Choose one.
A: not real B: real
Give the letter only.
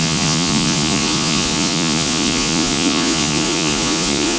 A